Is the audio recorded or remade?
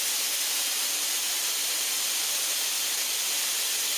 recorded